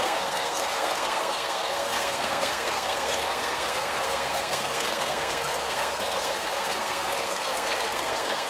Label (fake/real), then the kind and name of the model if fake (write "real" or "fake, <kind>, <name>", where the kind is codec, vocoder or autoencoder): fake, codec, SNAC